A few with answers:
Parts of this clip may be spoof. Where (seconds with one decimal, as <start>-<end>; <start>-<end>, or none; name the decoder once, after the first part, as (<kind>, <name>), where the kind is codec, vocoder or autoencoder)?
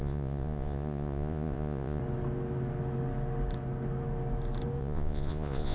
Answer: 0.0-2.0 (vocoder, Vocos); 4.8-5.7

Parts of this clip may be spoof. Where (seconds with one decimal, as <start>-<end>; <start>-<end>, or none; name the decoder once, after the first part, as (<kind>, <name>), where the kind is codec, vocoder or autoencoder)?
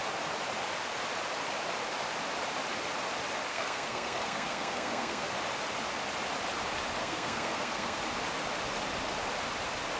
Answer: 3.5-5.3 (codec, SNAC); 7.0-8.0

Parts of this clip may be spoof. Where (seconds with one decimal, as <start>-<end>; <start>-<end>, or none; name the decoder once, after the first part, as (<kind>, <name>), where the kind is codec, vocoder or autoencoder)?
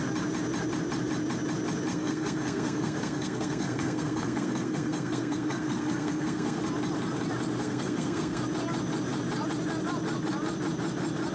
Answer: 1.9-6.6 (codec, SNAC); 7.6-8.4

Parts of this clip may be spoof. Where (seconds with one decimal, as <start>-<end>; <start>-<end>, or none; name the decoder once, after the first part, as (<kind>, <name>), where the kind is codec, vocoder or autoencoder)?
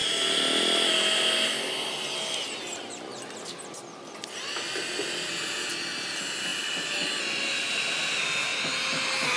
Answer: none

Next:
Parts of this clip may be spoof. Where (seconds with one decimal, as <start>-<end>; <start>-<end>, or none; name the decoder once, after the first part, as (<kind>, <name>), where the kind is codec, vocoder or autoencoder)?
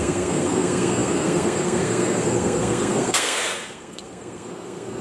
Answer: 0.0-5.0 (codec, SNAC)